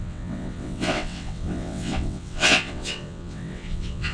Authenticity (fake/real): fake